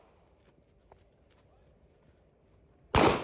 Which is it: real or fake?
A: real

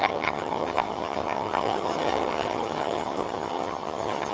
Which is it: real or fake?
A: fake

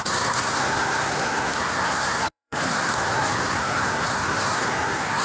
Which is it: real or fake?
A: fake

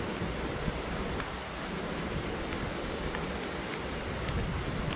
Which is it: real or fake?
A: real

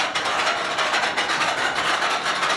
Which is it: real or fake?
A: real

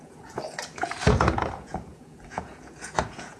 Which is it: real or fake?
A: fake